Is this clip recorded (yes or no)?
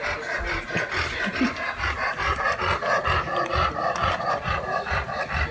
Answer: yes